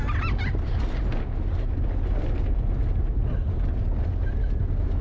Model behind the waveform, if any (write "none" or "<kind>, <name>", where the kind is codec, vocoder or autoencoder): none